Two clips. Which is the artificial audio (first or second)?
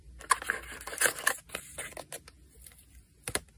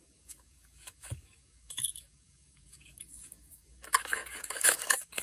second